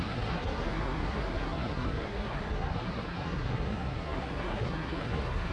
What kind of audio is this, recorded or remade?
remade